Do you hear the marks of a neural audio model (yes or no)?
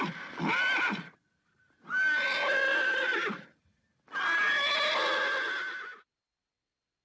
no